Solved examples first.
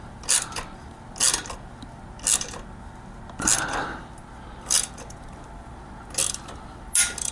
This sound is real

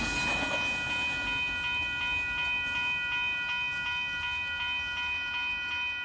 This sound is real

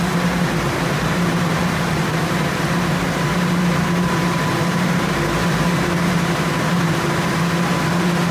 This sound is fake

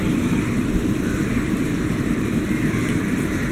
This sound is fake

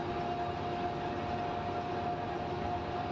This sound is real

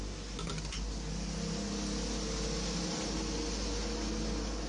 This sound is real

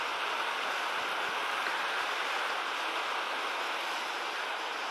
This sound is real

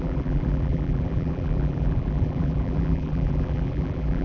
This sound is fake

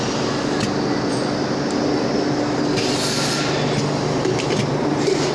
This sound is real